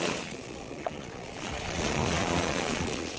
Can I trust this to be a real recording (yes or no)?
no